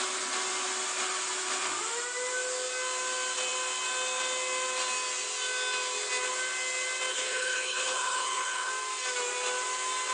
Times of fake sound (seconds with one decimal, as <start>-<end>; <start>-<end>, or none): 7.1-8.7